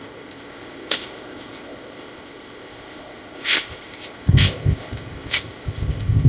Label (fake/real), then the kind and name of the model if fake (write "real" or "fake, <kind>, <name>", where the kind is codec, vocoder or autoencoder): fake, codec, ZipCodec